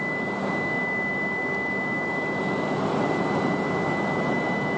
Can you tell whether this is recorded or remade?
recorded